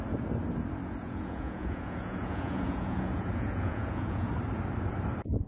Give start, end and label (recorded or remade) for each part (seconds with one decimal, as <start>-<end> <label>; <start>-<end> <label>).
0.0-1.0 recorded; 1.0-4.3 remade; 4.3-5.5 recorded